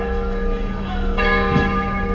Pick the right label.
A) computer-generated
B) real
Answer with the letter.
A